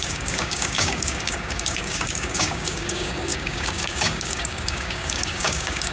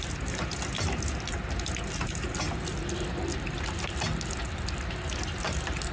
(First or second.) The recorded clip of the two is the second